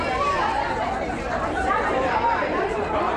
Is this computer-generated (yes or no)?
no